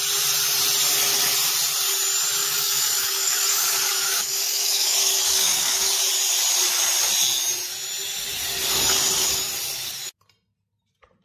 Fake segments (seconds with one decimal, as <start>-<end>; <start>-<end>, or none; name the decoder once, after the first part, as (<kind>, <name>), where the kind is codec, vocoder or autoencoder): 2.4-6.0 (codec, DAC)